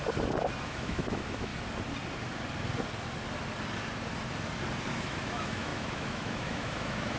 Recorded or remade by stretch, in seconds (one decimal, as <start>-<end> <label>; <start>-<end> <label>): 0.0-0.6 recorded; 0.6-1.5 remade; 1.5-4.9 recorded; 4.9-7.2 remade